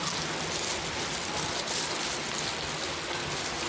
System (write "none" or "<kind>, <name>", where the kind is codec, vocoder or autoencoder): none